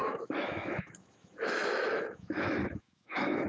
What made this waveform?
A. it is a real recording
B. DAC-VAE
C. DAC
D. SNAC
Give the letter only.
B